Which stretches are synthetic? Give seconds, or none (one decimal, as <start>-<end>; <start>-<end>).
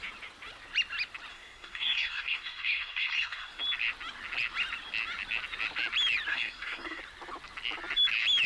1.3-3.6; 6.3-7.0